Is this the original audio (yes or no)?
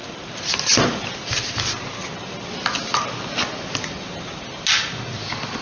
yes